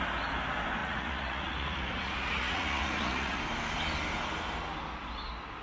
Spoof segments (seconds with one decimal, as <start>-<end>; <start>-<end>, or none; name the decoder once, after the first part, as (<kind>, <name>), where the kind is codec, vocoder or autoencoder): 0.8-3.4 (vocoder, Vocos)